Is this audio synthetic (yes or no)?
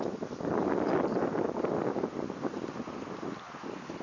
no